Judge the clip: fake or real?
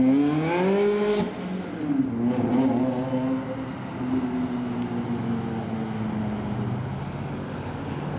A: real